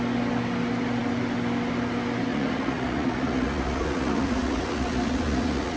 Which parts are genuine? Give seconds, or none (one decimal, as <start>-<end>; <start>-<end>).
0.0-2.3